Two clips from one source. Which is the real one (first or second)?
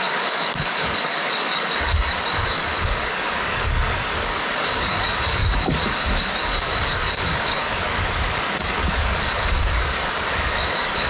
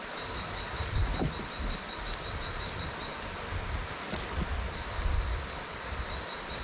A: second